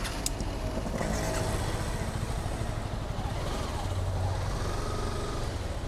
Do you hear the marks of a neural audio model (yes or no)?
no